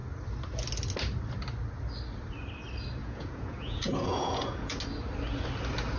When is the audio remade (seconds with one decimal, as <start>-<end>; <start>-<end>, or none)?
3.0-4.8